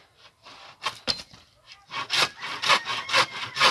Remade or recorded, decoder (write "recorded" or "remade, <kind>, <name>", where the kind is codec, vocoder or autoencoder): remade, vocoder, BigVGAN v2